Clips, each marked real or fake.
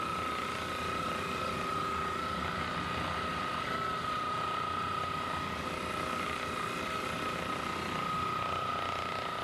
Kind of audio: real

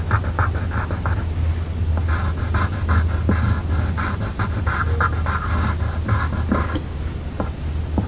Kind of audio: real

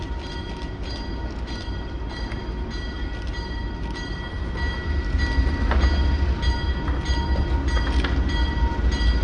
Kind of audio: real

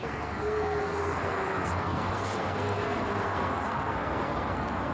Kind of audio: fake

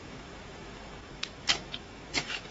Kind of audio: fake